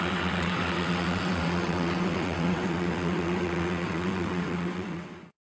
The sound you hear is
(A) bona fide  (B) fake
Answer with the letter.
B